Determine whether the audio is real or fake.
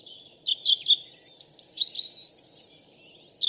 real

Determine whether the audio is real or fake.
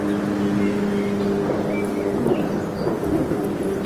real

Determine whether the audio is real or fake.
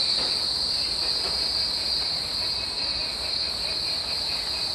real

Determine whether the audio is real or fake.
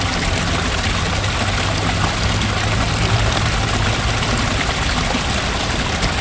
real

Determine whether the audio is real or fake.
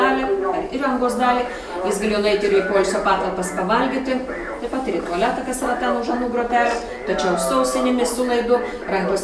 real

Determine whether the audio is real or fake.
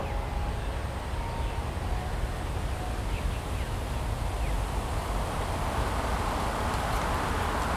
real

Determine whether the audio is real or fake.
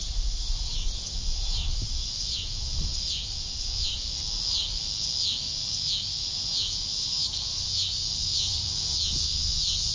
fake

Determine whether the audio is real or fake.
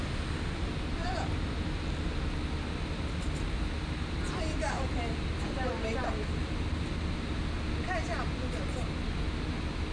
real